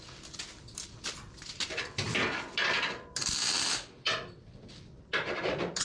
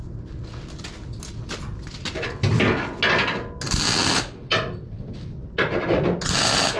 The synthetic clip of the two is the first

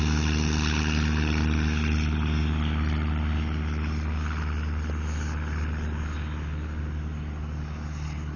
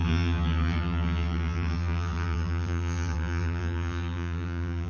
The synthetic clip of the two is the second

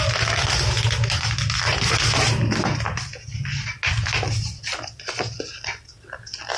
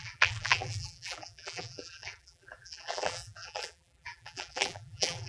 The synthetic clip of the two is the second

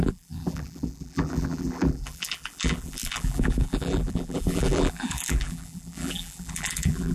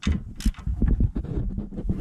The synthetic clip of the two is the first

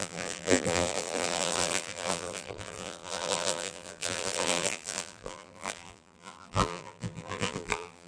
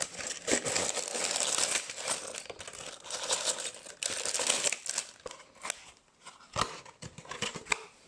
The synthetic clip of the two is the first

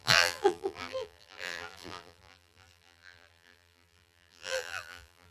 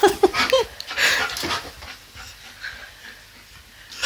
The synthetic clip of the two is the first